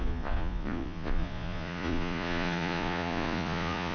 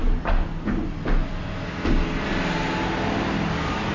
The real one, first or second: second